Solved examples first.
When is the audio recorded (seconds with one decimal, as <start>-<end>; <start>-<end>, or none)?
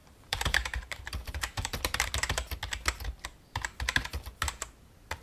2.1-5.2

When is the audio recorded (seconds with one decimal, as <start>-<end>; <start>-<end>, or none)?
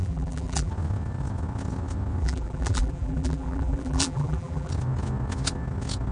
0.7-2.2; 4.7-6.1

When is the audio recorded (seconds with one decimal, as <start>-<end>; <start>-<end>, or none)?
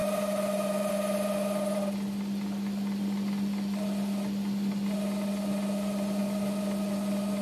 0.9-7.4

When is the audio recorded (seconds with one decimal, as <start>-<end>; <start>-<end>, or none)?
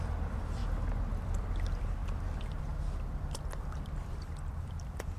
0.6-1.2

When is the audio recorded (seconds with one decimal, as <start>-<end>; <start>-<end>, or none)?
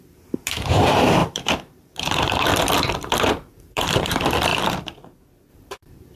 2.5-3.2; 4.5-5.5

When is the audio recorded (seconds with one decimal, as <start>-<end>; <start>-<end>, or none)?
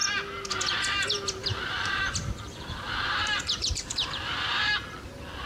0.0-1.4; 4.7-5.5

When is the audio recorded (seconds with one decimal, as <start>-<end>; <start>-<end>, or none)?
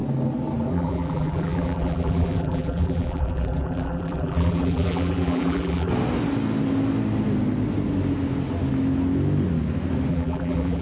0.0-0.7; 5.9-10.1